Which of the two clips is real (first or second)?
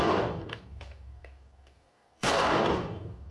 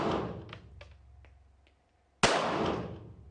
second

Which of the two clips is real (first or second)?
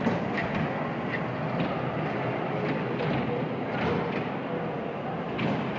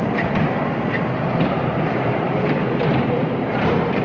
first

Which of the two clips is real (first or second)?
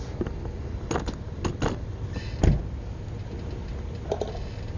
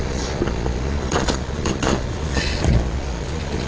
first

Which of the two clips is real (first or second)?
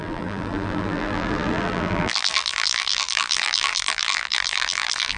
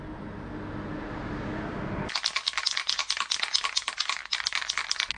second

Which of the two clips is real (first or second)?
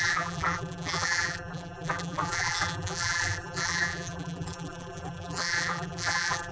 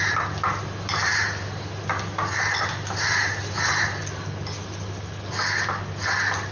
second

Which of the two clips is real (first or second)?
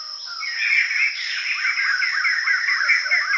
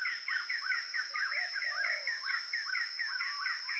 first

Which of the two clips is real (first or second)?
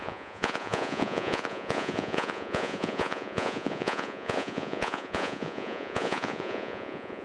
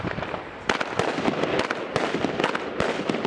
second